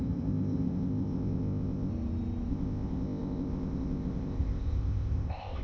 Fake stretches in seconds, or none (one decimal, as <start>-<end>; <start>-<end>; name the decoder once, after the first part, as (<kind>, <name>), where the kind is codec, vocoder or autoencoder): 0.0-1.9 (codec, ZipCodec); 2.5-5.6

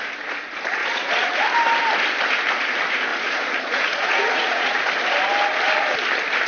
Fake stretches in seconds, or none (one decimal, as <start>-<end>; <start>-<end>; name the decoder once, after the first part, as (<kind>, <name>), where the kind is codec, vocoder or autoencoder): 0.8-1.4 (vocoder, Vocos); 3.1-4.9

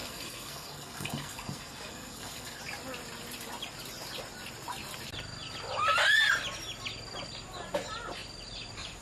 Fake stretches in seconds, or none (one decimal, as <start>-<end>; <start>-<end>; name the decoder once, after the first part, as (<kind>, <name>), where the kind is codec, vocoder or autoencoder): 0.0-2.6 (codec, SNAC)

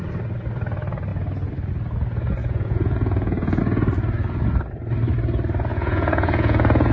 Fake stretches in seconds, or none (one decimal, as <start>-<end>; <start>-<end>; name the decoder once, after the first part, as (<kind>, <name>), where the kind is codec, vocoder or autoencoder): 2.4-3.6 (vocoder, Vocos); 5.7-6.9